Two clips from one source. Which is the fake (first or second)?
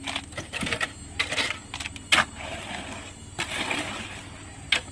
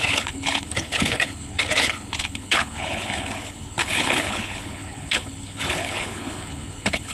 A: second